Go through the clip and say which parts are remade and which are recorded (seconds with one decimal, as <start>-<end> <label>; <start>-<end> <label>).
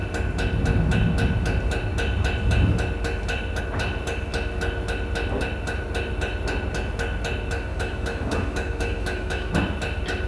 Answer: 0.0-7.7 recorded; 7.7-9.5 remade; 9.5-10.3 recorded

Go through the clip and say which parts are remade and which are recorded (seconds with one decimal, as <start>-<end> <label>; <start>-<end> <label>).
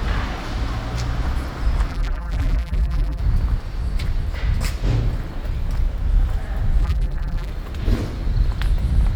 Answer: 0.0-1.9 recorded; 1.9-3.2 remade; 3.2-6.8 recorded; 6.8-7.5 remade; 7.5-9.2 recorded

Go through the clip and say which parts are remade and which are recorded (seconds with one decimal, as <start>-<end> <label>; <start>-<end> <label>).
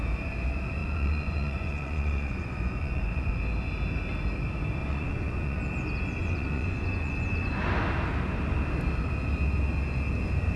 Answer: 0.0-0.8 recorded; 0.8-3.4 remade; 3.4-4.8 recorded; 4.8-5.6 remade; 5.6-6.2 recorded; 6.2-7.6 remade; 7.6-10.6 recorded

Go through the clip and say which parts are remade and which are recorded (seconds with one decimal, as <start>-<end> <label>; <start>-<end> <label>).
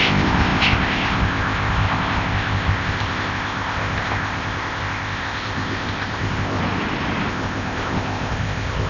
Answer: 0.0-6.6 remade; 6.6-7.3 recorded; 7.3-8.9 remade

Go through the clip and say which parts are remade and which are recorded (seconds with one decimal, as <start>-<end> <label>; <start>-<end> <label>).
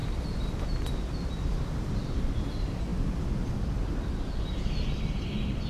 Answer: 0.0-5.7 recorded